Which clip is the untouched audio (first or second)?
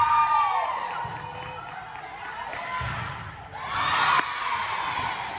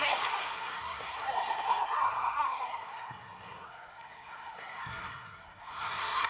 first